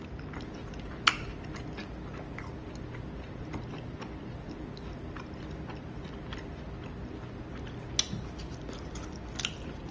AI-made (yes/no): no